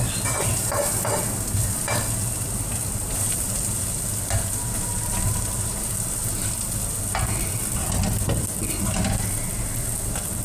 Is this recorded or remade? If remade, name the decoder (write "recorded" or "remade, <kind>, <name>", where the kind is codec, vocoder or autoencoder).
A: recorded